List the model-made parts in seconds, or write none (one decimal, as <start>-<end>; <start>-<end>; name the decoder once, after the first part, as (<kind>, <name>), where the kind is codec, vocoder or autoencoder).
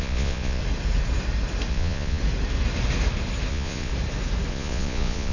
0.0-0.6 (vocoder, Vocos); 1.7-2.2; 3.5-3.9; 4.5-5.3